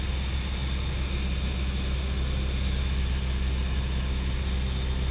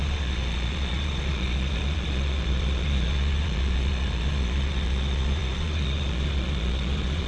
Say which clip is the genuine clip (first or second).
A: first